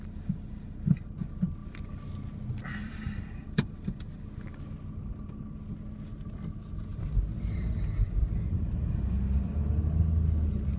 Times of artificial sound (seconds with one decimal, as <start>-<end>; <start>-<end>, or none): 2.8-4.2; 6.9-9.6